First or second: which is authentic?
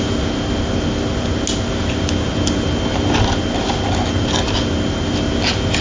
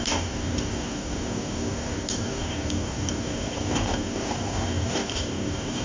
first